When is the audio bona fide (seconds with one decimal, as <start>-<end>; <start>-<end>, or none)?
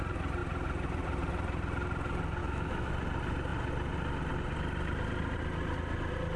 0.0-2.4; 2.9-6.4